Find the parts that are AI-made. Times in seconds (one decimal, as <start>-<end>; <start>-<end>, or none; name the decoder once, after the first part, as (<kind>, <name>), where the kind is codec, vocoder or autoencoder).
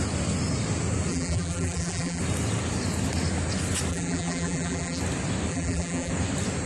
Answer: 1.1-2.2 (vocoder, BigVGAN v2); 3.9-5.0; 5.5-6.1